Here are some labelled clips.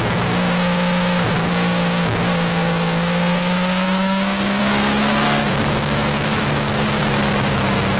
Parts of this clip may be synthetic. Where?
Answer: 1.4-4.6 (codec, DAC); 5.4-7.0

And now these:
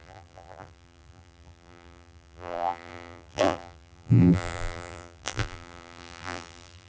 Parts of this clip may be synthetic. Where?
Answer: 0.0-6.9 (vocoder, BigVGAN v2)

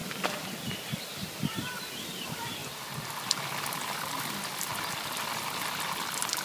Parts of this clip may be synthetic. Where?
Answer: 0.0-1.7 (vocoder, BigVGAN v2); 2.6-5.6

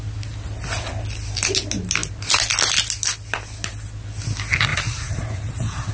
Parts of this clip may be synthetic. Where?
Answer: 4.7-5.9 (vocoder, Vocos)

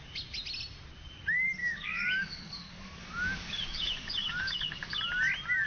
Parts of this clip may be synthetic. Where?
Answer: 1.6-5.0 (codec, DAC)

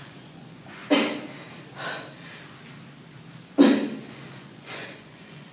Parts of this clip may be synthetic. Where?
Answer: 0.0-0.8 (vocoder, Vocos); 4.1-5.5

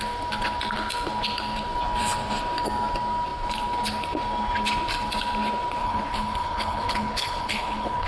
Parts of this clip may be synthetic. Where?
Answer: 5.8-8.1 (codec, HILCodec)